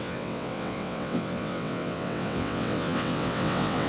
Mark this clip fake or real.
fake